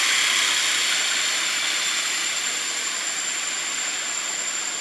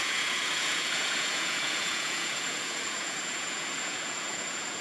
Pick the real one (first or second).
first